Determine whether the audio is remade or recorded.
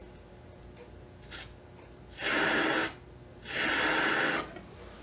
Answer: recorded